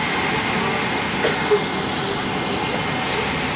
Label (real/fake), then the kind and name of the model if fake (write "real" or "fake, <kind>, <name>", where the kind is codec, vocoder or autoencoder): real